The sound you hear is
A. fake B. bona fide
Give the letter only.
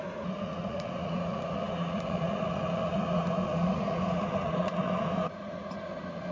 A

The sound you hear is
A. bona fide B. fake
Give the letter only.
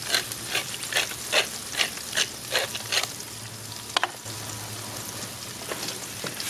A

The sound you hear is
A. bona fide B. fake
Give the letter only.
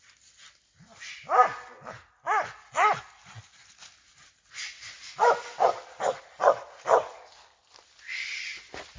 A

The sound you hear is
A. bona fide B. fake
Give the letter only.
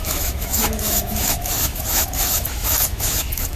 B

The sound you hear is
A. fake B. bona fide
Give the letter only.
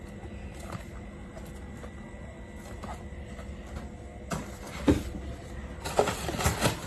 B